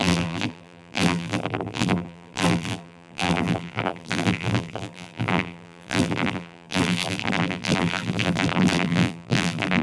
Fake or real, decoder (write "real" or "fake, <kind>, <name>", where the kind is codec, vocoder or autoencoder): fake, vocoder, BigVGAN v2